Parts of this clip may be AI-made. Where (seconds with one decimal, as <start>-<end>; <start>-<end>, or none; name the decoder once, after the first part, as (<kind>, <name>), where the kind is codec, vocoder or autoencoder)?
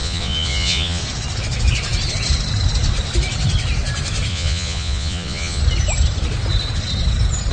0.0-1.0 (vocoder, Vocos); 4.3-5.6